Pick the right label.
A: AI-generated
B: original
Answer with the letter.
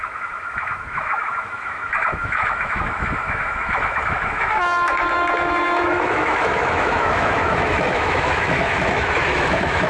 A